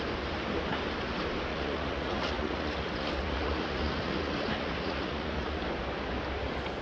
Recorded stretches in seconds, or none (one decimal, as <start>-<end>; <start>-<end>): 0.0-1.5; 5.6-6.8